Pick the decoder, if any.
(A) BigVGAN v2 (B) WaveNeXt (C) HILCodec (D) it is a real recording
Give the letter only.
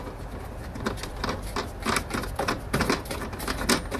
D